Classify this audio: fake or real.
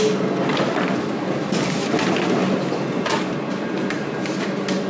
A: real